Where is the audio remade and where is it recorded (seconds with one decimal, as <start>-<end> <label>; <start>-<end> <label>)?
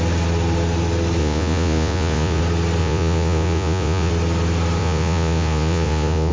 0.0-1.2 recorded; 1.2-2.4 remade; 2.4-2.8 recorded; 2.8-4.1 remade; 4.1-4.8 recorded; 4.8-6.3 remade